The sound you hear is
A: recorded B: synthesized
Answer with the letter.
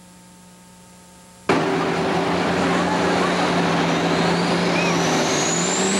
A